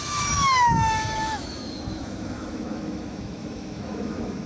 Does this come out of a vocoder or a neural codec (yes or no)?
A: yes